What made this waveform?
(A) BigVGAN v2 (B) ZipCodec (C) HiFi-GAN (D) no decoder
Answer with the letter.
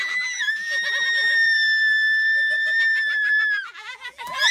A